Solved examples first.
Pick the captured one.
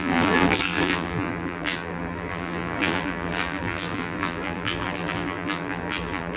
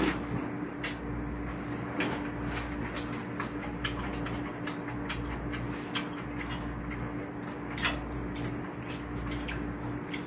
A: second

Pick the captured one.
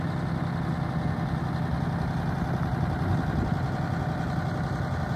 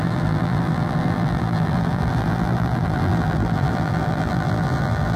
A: first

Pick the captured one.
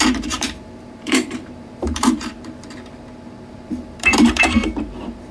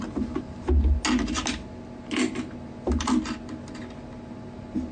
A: second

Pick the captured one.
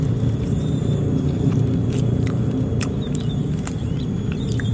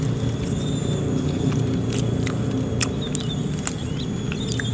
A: second